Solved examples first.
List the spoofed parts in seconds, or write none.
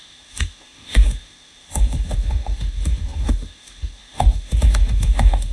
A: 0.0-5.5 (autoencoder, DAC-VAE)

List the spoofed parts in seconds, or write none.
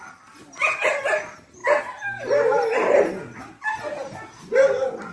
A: none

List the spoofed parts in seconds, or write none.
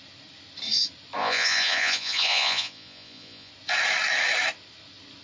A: 1.2-3.5 (vocoder, Vocos)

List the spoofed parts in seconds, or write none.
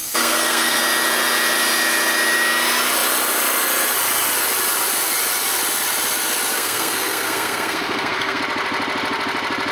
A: 0.0-0.8 (codec, SNAC); 6.5-8.4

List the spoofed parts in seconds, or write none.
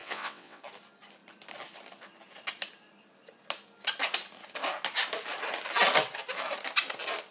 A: 0.0-0.6 (vocoder, WaveNeXt)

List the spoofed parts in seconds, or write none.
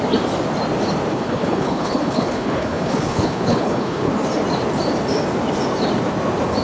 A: 1.1-4.1 (codec, HILCodec)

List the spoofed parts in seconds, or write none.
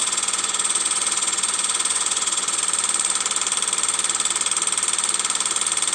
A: 0.0-2.6 (vocoder, Vocos)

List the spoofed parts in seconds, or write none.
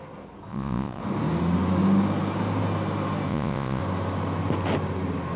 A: 0.5-1.0 (vocoder, Vocos); 3.3-3.8